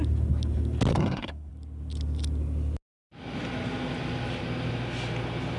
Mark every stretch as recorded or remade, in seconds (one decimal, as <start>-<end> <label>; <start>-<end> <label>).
0.0-0.9 recorded; 0.9-1.5 remade; 1.5-5.6 recorded